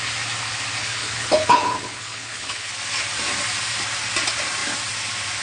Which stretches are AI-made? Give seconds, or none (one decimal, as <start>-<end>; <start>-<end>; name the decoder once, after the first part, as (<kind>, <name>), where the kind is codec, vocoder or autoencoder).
0.8-2.7 (codec, HILCodec)